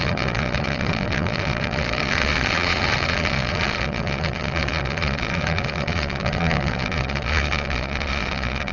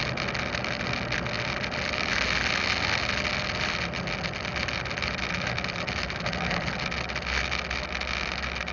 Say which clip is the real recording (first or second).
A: second